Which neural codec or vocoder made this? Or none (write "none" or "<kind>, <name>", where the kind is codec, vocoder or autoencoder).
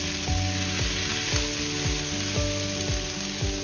none